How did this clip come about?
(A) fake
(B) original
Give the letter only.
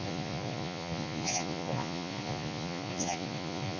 A